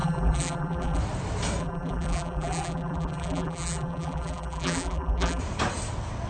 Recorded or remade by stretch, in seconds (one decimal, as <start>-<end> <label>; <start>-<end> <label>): 0.0-1.0 remade; 1.0-1.6 recorded; 1.6-5.4 remade; 5.4-6.3 recorded